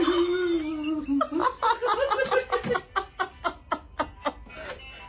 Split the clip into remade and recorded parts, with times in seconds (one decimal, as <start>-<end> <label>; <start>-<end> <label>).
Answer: 0.0-5.1 recorded